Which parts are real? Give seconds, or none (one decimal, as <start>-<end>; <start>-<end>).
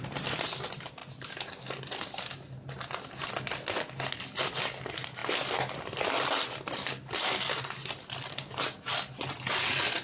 0.0-10.0